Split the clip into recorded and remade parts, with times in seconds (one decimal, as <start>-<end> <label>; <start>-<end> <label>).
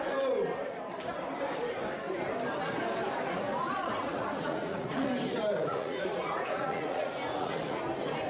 0.0-3.5 recorded; 3.5-5.1 remade; 5.1-5.7 recorded; 5.7-7.8 remade; 7.8-8.3 recorded